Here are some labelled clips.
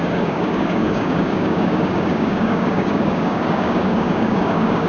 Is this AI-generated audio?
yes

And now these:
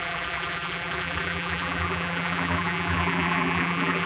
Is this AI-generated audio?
yes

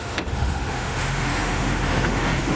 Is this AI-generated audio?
yes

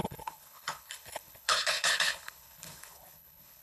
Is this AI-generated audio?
yes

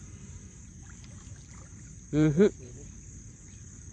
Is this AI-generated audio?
yes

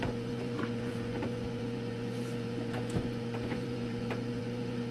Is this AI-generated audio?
yes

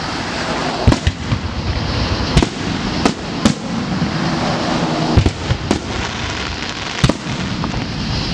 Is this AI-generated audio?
no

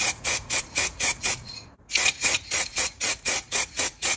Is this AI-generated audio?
yes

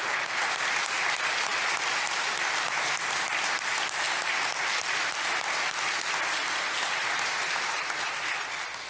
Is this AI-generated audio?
no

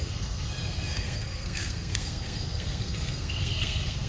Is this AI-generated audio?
yes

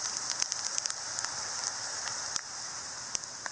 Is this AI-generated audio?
no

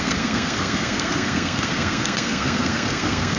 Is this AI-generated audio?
yes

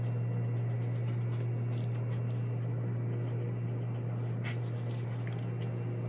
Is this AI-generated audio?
no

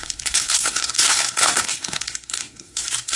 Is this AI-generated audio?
yes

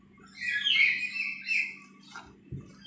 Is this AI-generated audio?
no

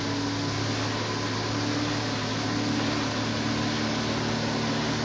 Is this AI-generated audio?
no